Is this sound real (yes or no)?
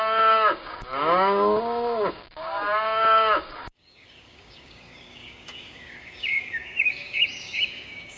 no